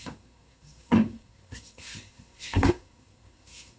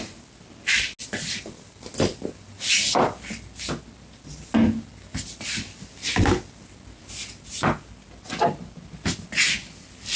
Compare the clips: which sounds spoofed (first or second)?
first